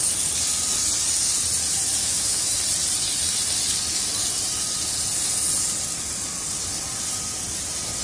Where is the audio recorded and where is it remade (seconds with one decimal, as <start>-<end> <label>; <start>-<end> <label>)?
0.0-2.0 recorded; 2.0-2.6 remade; 2.6-8.0 recorded